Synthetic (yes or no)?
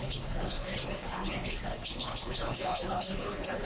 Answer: yes